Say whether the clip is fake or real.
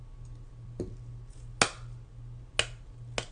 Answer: real